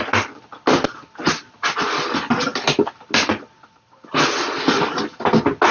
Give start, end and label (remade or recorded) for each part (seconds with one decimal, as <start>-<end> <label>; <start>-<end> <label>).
0.0-5.7 recorded